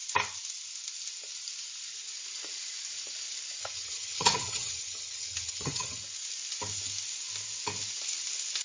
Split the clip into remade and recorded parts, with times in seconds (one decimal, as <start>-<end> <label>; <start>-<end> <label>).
0.0-3.6 recorded; 3.6-6.0 remade; 6.0-8.6 recorded